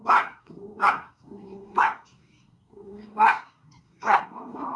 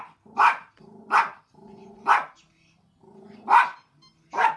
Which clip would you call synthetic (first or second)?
first